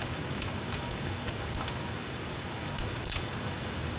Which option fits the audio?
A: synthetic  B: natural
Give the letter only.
A